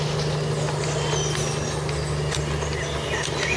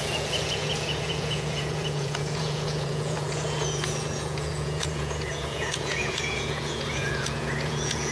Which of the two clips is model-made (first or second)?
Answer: second